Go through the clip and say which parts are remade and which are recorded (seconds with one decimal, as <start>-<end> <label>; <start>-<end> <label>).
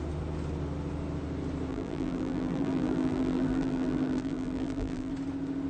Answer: 0.0-1.7 recorded; 1.7-5.1 remade; 5.1-5.7 recorded